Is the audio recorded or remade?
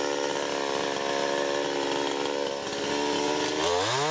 recorded